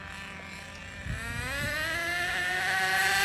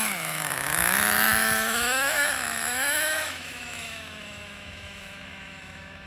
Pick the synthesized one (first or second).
second